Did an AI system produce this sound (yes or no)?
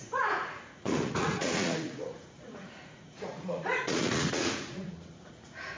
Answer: yes